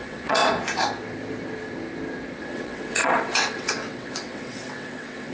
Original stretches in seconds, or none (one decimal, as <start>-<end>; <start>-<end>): 0.4-2.4